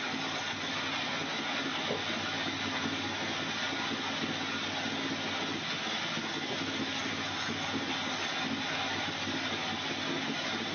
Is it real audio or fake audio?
real